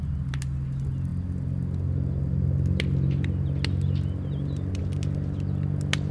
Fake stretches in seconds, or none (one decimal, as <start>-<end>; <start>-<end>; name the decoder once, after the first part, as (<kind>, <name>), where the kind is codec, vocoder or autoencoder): none